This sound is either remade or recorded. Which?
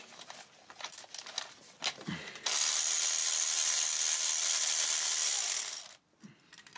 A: recorded